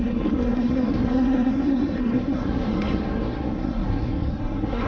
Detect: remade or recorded remade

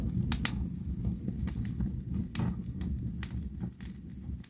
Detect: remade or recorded recorded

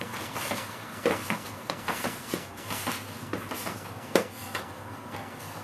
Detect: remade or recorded remade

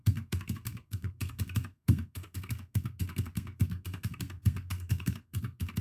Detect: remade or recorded remade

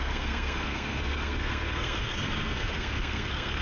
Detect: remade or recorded remade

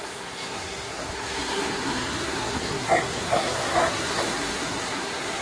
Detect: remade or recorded remade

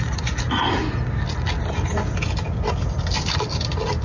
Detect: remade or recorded recorded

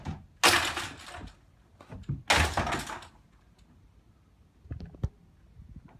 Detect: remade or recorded recorded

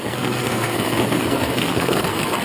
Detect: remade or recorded remade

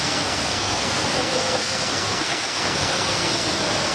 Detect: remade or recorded remade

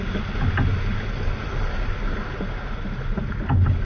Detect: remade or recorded recorded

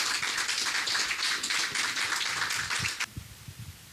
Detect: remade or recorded recorded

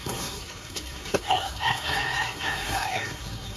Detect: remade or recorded remade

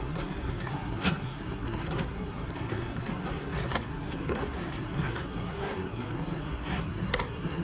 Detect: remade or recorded remade